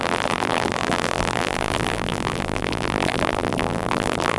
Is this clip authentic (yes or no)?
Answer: no